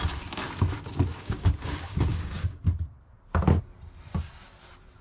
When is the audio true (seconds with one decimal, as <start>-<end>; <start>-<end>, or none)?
0.0-1.1; 2.6-5.0